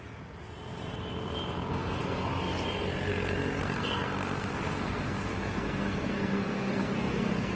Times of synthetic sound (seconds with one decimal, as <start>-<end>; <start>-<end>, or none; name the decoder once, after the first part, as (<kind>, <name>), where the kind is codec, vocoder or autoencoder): 1.7-2.3 (codec, SNAC); 3.1-7.6